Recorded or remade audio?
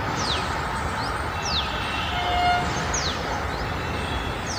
recorded